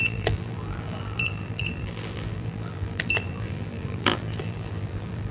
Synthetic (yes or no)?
yes